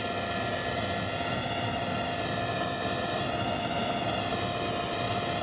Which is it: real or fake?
real